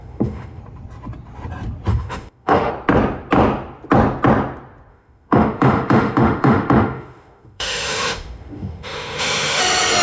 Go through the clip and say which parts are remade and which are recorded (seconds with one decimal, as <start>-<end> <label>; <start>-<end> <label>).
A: 0.0-0.6 remade; 0.6-1.9 recorded; 1.9-2.7 remade; 2.7-4.9 recorded; 4.9-9.6 remade; 9.6-10.0 recorded